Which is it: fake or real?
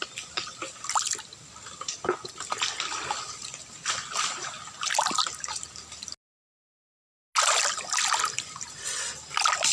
real